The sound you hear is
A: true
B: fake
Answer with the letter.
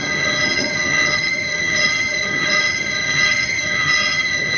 B